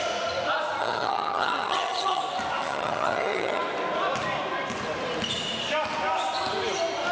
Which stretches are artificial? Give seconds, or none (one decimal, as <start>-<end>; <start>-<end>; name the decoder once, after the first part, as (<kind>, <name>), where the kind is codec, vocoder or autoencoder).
0.8-2.2 (vocoder, HiFi-GAN); 2.6-3.6